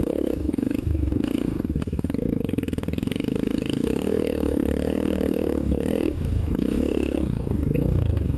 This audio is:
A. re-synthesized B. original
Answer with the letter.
A